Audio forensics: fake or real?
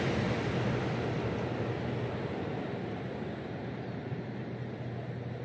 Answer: real